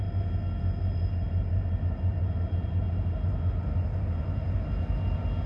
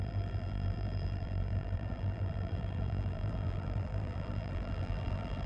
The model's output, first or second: second